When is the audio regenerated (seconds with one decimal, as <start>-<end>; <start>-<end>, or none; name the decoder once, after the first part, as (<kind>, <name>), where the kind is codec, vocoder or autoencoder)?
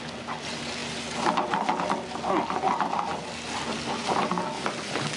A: none